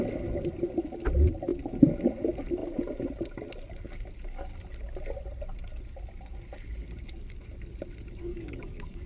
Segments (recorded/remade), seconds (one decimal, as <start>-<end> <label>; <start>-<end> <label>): 0.0-8.2 recorded; 8.2-9.1 remade